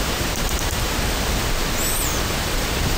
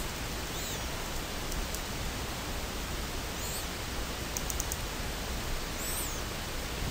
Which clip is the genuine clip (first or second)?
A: second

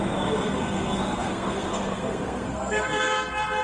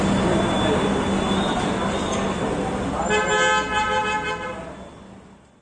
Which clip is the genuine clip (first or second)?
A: second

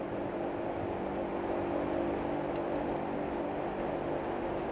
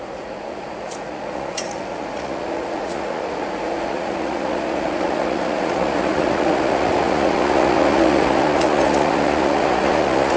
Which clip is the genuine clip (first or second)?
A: first